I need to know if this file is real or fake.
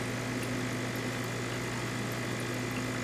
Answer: real